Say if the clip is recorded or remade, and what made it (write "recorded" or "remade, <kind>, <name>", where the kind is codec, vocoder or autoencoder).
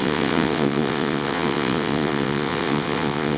remade, vocoder, WaveNeXt